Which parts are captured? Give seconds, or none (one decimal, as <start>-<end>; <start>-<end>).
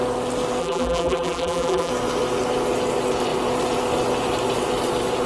0.0-0.6; 1.9-5.3